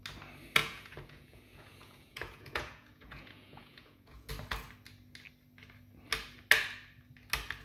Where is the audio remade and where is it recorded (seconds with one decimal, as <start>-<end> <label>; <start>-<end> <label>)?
0.0-0.6 recorded; 0.6-4.3 remade; 4.3-7.6 recorded